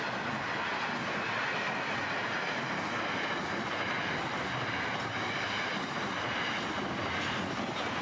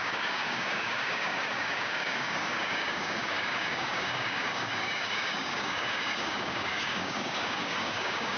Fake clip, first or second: second